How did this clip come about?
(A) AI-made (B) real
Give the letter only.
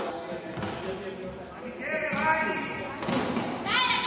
B